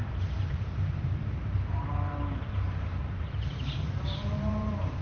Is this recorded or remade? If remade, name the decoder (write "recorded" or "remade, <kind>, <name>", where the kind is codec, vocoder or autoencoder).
remade, vocoder, BigVGAN v2